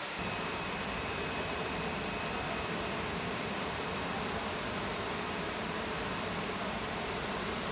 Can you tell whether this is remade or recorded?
remade